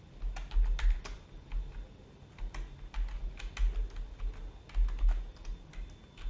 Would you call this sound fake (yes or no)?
no